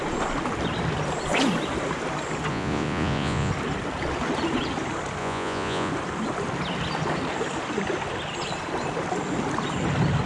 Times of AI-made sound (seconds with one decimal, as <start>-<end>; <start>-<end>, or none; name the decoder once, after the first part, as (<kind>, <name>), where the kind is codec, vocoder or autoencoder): 2.5-3.5 (vocoder, Vocos); 5.2-5.9

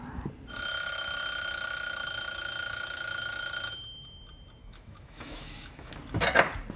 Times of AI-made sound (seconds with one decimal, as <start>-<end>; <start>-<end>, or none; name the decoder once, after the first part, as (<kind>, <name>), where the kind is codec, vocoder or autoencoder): 4.6-5.9 (autoencoder, DAC-VAE)

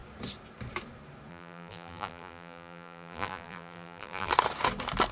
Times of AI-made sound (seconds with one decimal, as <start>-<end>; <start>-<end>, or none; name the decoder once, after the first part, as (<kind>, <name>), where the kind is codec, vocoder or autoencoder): 1.3-4.3 (vocoder, BigVGAN v2)

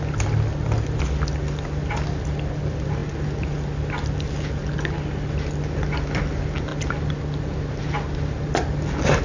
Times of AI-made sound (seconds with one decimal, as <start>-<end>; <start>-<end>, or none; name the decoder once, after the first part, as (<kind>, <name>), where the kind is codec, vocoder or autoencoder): none